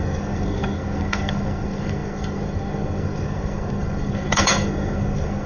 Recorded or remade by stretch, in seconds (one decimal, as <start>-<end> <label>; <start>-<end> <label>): 0.0-5.5 remade

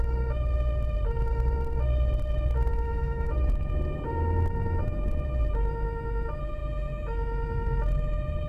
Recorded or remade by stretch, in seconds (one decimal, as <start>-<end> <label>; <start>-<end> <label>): 0.0-2.7 recorded; 2.7-3.7 remade; 3.7-8.5 recorded

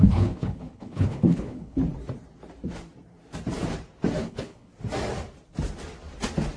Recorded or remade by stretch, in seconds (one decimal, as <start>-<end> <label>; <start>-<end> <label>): 0.0-1.8 remade; 1.8-4.2 recorded; 4.2-4.7 remade; 4.7-6.6 recorded